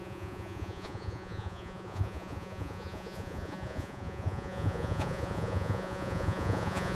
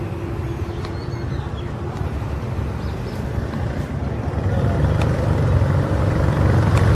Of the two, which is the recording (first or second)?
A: second